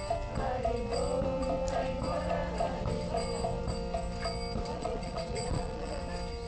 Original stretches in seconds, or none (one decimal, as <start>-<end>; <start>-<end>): 0.0-4.7; 6.0-6.5